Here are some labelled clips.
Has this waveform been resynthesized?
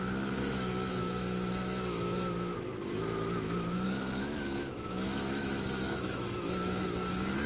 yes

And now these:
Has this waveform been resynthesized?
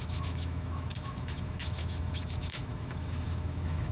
yes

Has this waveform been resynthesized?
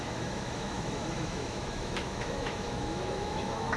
yes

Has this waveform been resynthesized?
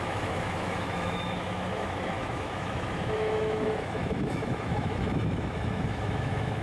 yes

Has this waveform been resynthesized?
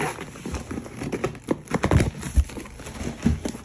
no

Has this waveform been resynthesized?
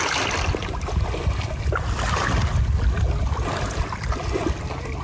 no